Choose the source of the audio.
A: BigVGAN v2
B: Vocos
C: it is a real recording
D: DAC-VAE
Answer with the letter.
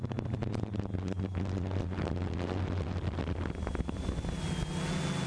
C